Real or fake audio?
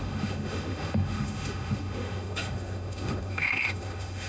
fake